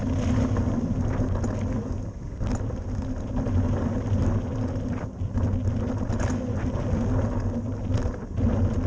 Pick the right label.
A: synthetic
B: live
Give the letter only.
B